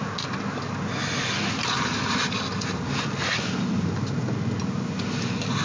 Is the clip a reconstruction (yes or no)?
no